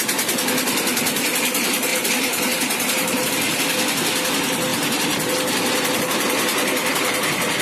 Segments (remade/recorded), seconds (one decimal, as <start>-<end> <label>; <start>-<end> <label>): 0.0-1.9 recorded; 1.9-3.3 remade; 3.3-7.6 recorded